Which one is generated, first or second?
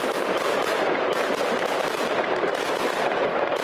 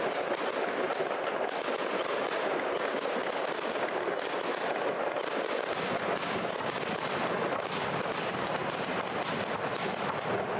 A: first